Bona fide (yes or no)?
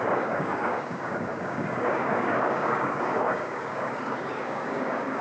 no